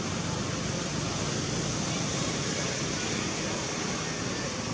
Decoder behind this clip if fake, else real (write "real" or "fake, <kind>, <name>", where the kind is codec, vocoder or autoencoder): real